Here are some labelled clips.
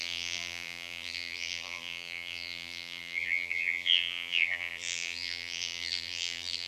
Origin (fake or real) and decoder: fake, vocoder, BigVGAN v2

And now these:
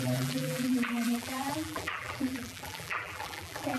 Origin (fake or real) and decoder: fake, vocoder, BigVGAN v2